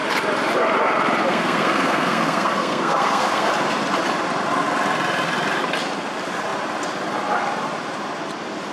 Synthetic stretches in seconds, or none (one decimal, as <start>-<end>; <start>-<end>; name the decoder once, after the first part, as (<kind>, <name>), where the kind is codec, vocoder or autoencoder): 1.3-3.5 (codec, SNAC)